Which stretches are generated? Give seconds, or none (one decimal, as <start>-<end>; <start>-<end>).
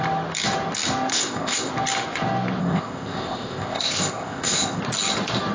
1.1-1.7; 2.6-4.8